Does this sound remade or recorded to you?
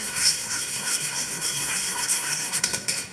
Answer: remade